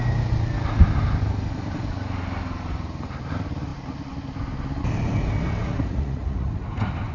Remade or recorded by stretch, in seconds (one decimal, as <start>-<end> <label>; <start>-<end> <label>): 0.0-5.6 recorded; 5.6-6.5 remade; 6.5-7.1 recorded